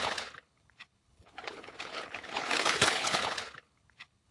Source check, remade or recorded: remade